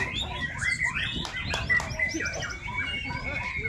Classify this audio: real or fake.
real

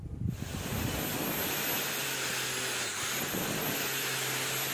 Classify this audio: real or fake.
real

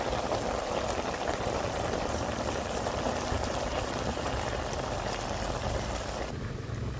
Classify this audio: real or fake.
real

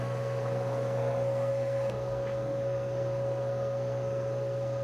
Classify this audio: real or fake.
fake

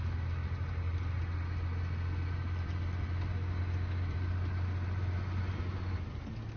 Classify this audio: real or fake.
real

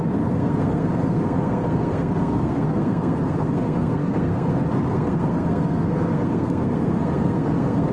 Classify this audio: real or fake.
fake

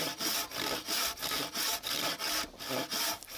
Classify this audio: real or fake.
real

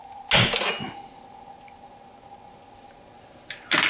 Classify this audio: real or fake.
real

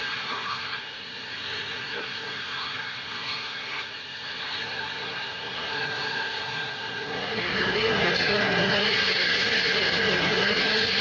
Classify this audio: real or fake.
fake